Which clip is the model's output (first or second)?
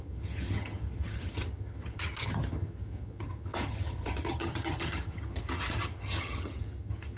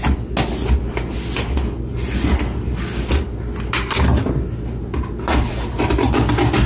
first